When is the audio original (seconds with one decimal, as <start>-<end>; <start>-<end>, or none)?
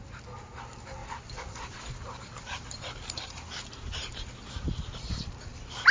0.0-5.9